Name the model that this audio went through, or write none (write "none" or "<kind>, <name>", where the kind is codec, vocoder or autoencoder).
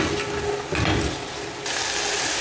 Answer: none